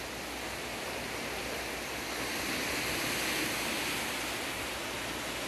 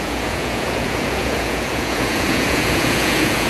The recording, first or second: first